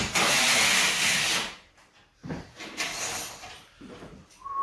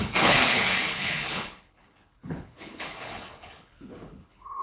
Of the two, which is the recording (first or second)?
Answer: first